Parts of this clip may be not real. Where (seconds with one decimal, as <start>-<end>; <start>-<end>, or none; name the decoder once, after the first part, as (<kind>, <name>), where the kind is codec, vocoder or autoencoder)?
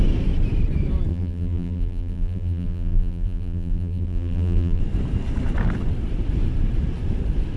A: 1.1-4.8 (vocoder, BigVGAN v2)